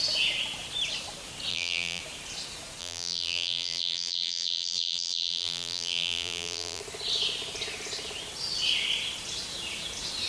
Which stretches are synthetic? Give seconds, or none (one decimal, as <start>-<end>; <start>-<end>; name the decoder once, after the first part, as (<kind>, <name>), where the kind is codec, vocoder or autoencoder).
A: 1.5-2.0 (vocoder, BigVGAN v2); 2.8-6.8